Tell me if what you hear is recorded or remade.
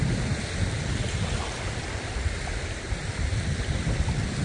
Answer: remade